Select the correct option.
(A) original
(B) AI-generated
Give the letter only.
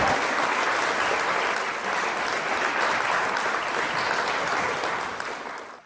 A